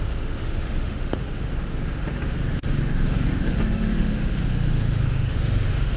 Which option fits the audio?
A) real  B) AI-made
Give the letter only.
B